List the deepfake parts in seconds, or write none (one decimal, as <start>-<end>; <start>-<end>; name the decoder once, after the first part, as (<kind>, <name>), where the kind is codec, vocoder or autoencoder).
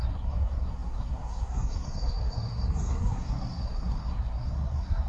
0.0-5.1 (codec, SNAC)